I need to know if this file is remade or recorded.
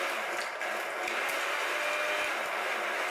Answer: recorded